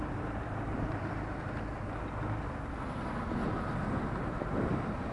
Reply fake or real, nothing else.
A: real